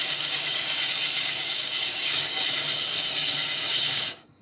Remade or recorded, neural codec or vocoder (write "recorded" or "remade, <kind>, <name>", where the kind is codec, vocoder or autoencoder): remade, codec, DAC